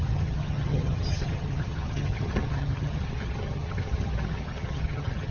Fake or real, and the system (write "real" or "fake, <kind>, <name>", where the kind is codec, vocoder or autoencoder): fake, vocoder, HiFi-GAN